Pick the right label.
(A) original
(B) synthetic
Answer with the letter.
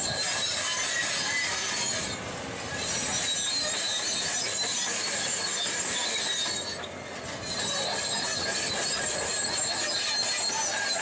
A